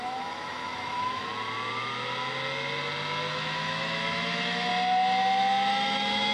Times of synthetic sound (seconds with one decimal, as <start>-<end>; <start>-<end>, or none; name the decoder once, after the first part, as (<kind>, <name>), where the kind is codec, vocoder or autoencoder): 0.0-1.3 (autoencoder, DAC-VAE); 3.3-4.7; 5.7-6.3